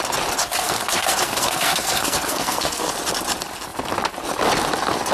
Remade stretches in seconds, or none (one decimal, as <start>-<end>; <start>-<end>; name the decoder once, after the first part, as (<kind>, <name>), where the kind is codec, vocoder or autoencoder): 0.4-2.9 (codec, SNAC)